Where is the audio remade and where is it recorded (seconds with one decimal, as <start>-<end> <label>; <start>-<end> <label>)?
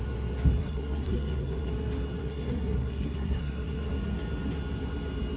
0.0-0.6 recorded; 0.6-1.7 remade; 1.7-2.2 recorded; 2.2-3.9 remade; 3.9-5.4 recorded